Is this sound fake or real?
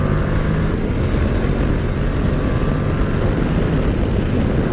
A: real